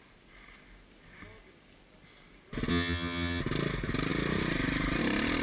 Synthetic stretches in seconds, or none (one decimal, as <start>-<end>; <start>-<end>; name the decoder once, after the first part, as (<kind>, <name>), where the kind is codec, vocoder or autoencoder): 2.7-3.4 (vocoder, HiFi-GAN)